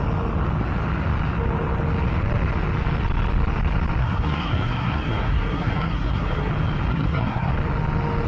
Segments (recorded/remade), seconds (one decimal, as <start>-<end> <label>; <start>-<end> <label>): 0.0-4.0 recorded; 4.0-6.5 remade; 6.5-6.9 recorded; 6.9-7.5 remade; 7.5-8.3 recorded